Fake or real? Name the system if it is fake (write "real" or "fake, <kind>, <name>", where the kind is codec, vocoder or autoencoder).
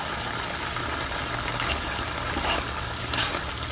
real